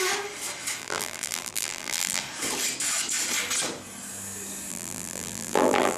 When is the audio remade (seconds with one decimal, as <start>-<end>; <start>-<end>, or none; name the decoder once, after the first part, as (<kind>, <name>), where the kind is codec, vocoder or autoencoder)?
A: 0.8-2.2 (vocoder, BigVGAN v2); 4.7-6.0